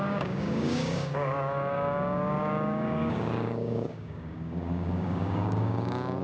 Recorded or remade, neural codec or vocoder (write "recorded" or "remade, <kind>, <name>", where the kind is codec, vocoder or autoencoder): remade, codec, DAC